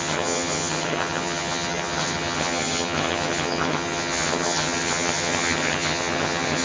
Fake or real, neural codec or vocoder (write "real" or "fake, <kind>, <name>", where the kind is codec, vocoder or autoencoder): fake, vocoder, HiFi-GAN